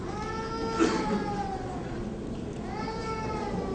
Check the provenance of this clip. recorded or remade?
recorded